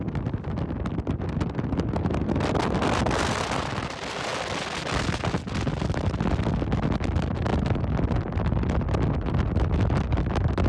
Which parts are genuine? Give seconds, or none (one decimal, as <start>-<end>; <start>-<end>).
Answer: 0.0-10.7

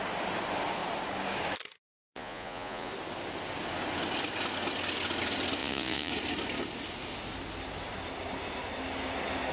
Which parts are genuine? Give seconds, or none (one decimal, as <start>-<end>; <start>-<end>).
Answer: 0.0-1.9; 2.9-5.6; 6.1-9.5

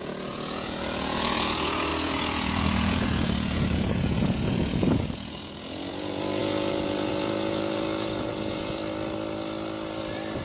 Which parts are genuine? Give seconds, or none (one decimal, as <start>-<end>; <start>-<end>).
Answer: 8.8-10.4

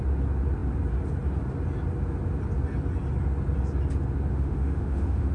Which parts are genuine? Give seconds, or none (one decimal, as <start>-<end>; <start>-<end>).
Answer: 0.0-4.3

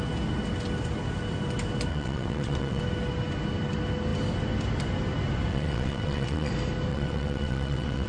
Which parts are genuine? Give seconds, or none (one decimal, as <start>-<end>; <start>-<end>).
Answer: 0.0-1.9; 2.8-5.5; 6.5-6.9

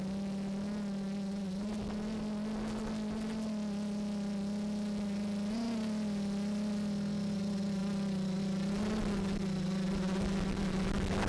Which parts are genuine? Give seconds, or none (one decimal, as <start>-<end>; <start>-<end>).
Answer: 0.0-11.3

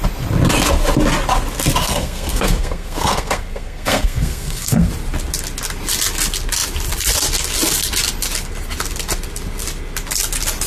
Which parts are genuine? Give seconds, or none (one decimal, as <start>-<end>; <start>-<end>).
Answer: 0.0-1.8; 4.9-10.7